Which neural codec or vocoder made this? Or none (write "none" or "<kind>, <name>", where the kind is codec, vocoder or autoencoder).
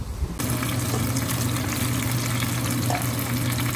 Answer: none